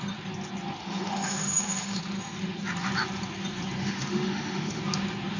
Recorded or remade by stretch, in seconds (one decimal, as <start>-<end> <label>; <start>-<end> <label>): 0.0-0.8 recorded; 0.8-2.0 remade; 2.0-3.8 recorded; 3.8-4.8 remade; 4.8-5.4 recorded

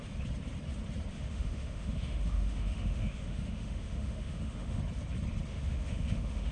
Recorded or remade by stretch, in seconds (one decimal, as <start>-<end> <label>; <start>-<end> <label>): 0.0-1.1 recorded; 1.1-4.8 remade; 4.8-5.5 recorded; 5.5-6.5 remade

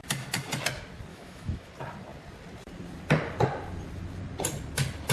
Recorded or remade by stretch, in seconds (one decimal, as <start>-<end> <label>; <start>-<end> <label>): 0.0-1.1 recorded; 1.1-1.7 remade; 1.7-5.1 recorded